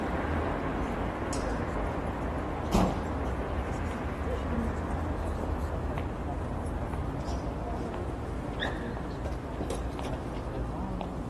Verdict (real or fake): real